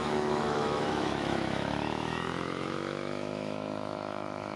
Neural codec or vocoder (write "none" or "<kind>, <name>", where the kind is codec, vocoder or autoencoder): autoencoder, DAC-VAE